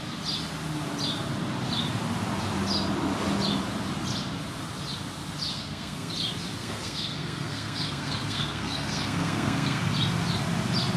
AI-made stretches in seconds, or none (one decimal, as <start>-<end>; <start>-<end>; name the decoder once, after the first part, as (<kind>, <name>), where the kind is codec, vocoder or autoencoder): 5.5-6.1 (codec, SNAC); 6.6-9.8